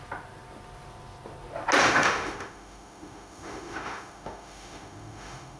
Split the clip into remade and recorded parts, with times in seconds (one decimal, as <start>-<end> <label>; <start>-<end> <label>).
0.0-1.8 recorded; 1.8-5.6 remade